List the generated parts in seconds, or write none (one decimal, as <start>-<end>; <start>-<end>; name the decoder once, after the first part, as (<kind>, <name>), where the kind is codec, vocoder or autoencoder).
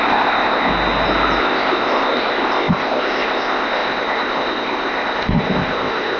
0.0-0.7 (codec, ZipCodec); 1.4-6.2